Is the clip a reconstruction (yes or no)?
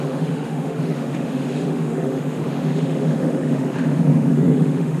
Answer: yes